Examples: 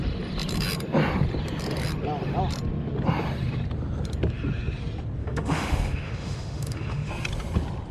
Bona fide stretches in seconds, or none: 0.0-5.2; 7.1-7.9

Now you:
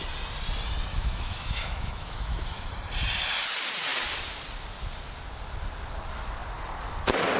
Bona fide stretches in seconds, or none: 0.0-0.9; 2.7-7.4

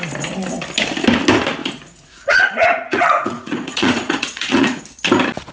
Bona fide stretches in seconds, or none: 0.0-1.6; 4.8-5.5